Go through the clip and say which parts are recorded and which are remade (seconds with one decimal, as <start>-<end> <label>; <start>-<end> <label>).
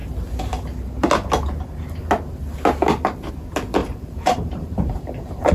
0.0-3.8 recorded; 3.8-5.5 remade